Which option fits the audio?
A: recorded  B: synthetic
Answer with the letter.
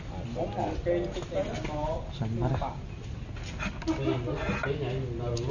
A